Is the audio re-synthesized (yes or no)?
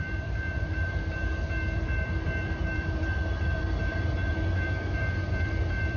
yes